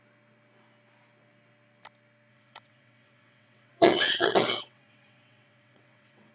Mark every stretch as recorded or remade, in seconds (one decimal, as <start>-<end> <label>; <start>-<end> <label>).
0.0-2.3 recorded; 2.3-6.3 remade